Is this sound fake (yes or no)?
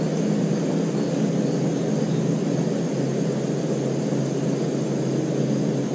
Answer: no